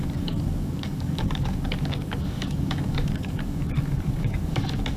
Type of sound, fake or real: fake